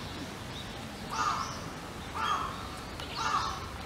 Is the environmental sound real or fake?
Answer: real